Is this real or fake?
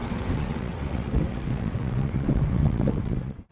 fake